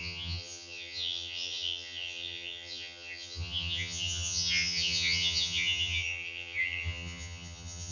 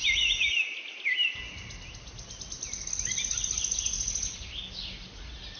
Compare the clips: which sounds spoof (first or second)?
first